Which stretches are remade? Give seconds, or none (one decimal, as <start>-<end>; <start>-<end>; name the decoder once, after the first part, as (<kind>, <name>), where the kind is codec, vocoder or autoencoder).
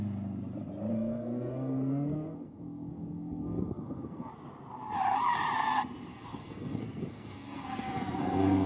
0.9-4.3 (codec, SNAC); 6.1-8.7